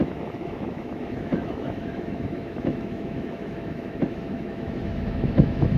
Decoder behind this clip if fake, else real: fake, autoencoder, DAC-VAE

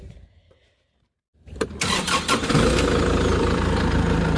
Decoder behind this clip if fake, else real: fake, vocoder, BigVGAN v2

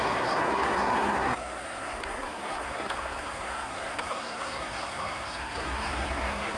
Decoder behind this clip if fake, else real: fake, codec, SNAC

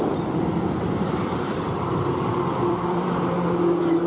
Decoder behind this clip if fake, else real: fake, vocoder, BigVGAN v2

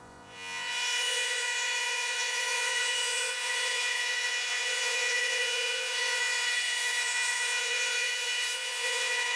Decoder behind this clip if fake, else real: fake, vocoder, Vocos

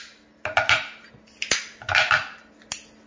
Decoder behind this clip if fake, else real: real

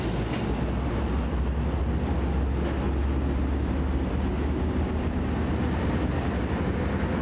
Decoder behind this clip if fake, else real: real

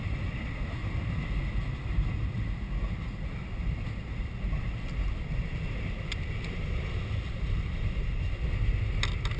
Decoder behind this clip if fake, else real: real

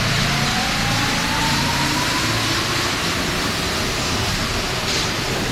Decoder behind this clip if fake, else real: real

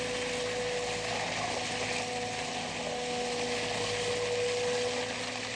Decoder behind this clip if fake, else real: real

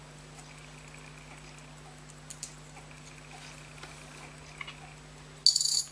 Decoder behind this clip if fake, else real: real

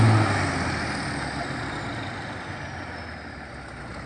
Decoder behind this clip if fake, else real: real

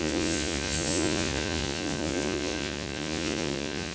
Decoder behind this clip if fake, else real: fake, vocoder, Vocos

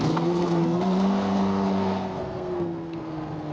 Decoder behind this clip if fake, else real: fake, codec, SNAC